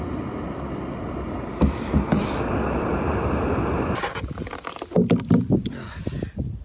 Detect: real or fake real